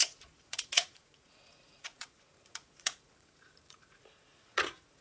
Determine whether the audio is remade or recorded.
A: remade